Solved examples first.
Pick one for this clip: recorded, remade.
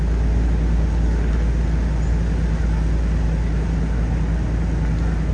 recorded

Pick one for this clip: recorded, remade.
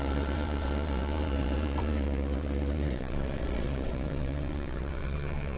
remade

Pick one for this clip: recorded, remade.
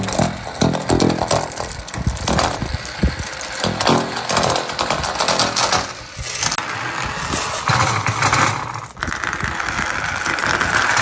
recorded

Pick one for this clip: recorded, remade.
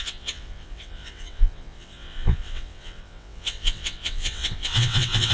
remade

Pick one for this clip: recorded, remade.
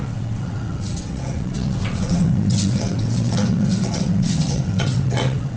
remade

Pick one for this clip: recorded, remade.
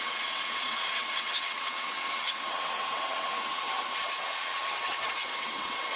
remade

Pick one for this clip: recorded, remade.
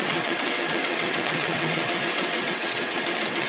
remade